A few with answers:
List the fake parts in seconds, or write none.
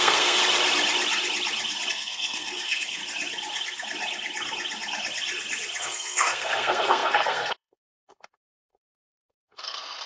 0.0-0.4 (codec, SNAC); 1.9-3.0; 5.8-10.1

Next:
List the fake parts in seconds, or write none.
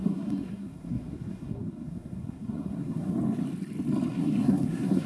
0.0-3.1 (codec, SNAC); 4.1-5.1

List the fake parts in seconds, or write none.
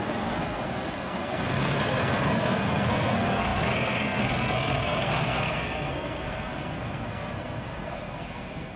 0.0-8.8 (codec, SNAC)